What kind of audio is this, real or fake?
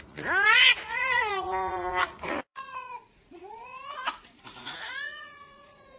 fake